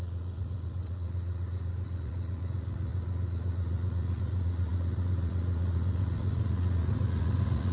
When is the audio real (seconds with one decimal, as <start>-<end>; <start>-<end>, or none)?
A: none